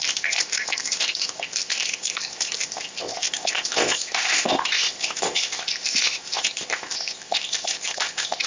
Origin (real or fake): fake